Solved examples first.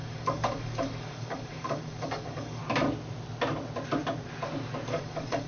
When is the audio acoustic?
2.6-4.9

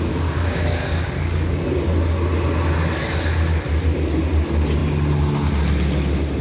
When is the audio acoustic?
0.0-0.8; 1.6-6.4

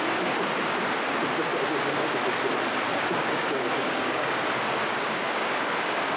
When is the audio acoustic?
0.0-2.9; 4.4-4.9